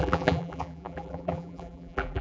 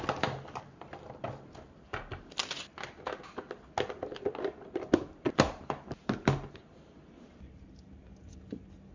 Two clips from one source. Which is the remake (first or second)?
first